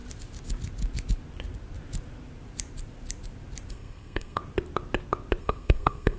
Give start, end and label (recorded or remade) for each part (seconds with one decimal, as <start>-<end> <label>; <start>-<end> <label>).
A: 0.0-3.7 recorded; 3.7-4.4 remade; 4.4-5.4 recorded; 5.4-6.2 remade